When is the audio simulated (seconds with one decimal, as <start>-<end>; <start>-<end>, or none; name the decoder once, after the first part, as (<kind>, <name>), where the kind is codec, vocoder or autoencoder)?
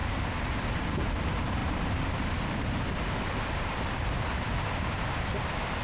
0.0-0.5 (vocoder, BigVGAN v2); 1.6-4.1